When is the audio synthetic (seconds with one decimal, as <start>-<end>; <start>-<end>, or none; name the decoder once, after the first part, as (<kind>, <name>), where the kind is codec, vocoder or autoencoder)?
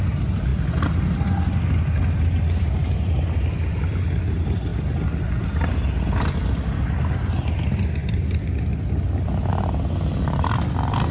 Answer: none